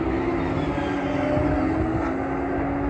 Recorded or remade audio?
recorded